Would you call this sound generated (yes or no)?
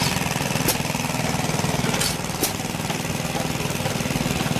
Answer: no